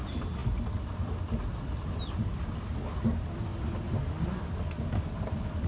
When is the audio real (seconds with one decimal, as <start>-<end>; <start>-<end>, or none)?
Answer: 0.0-5.7